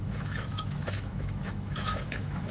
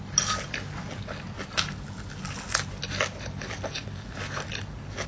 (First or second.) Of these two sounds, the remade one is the first